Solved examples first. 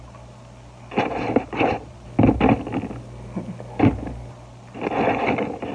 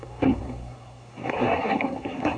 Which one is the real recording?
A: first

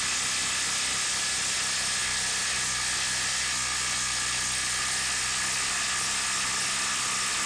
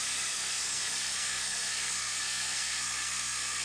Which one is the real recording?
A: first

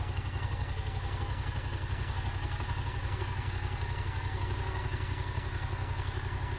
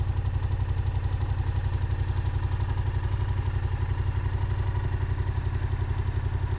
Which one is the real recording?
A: second